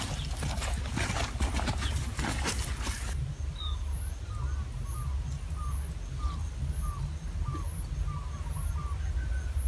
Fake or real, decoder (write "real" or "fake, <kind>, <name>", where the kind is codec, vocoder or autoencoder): real